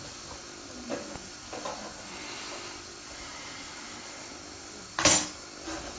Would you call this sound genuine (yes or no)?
yes